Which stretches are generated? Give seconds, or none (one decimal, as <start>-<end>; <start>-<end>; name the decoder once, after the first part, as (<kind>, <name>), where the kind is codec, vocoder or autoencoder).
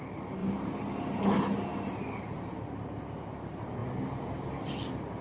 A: none